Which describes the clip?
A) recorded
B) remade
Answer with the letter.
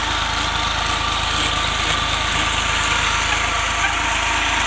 A